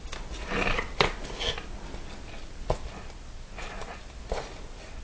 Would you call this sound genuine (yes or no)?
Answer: yes